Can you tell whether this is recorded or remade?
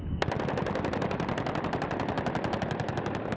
recorded